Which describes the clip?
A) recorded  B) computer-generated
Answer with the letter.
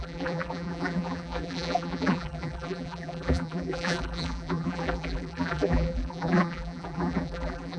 B